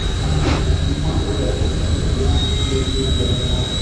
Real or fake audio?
real